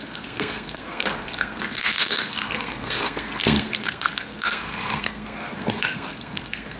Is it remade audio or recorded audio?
remade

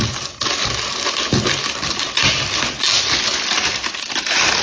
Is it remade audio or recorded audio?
recorded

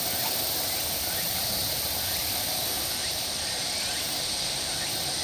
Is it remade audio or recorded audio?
recorded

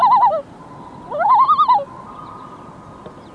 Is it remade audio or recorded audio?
recorded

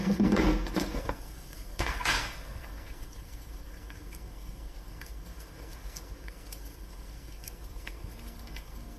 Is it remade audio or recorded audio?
remade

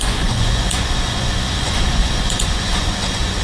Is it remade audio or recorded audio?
remade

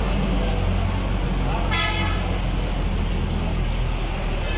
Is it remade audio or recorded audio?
recorded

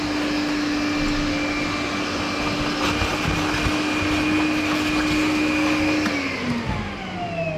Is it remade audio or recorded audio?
recorded